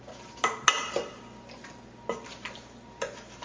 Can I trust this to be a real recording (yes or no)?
yes